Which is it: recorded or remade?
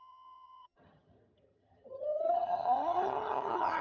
remade